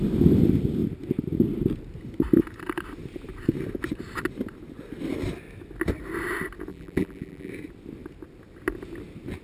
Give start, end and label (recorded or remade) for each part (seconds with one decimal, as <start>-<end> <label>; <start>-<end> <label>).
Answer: 0.0-6.7 recorded; 6.7-7.5 remade; 7.5-9.4 recorded